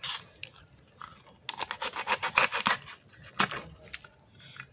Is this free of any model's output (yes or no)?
yes